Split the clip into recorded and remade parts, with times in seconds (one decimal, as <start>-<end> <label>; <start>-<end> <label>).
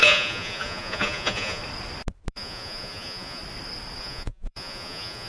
0.0-1.6 remade; 1.6-2.3 recorded; 2.3-3.4 remade; 3.4-4.0 recorded; 4.0-5.3 remade